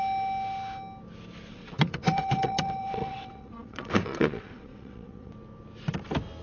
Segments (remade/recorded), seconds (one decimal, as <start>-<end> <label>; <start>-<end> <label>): 0.0-1.5 recorded; 1.5-5.3 remade; 5.3-6.4 recorded